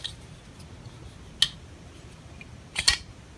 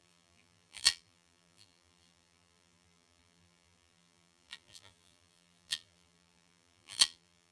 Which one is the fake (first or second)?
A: second